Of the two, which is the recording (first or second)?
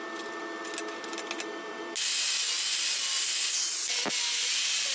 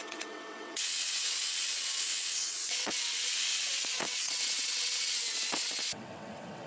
first